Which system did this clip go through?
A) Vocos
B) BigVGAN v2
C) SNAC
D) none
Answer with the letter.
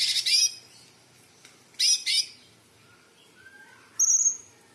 D